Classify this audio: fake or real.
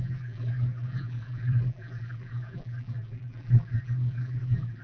fake